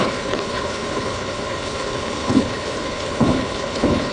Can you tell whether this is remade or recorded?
remade